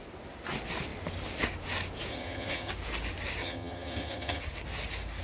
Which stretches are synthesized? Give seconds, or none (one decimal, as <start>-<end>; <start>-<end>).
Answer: 2.1-2.7; 3.4-4.4